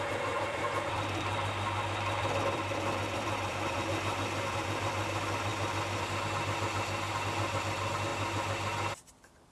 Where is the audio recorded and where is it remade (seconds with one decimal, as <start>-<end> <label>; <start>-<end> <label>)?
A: 0.0-5.5 remade; 5.5-7.6 recorded; 7.6-8.1 remade; 8.1-9.5 recorded